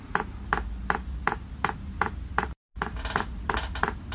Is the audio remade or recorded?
recorded